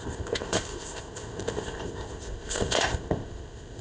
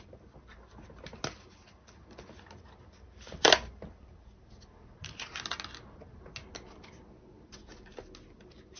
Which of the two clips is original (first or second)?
second